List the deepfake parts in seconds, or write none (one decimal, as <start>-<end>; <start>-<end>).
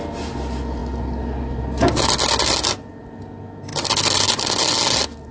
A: none